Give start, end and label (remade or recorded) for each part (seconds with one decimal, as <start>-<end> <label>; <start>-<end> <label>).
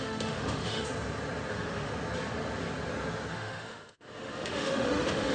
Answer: 0.0-0.9 remade; 0.9-1.5 recorded; 1.5-1.9 remade; 1.9-3.3 recorded; 3.3-5.3 remade